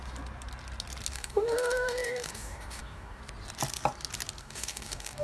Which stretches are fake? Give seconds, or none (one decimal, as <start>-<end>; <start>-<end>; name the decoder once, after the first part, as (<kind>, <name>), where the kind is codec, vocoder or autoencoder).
1.1-3.2 (codec, DAC); 4.4-5.2